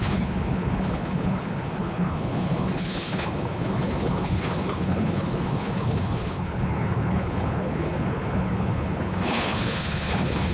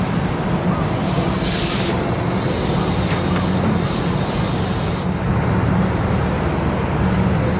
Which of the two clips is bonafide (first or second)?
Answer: second